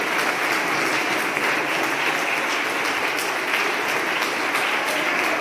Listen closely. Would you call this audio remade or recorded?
recorded